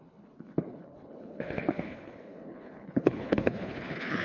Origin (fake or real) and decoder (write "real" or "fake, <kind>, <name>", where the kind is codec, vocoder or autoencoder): fake, codec, HILCodec